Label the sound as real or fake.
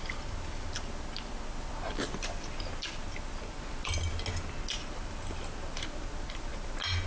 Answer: real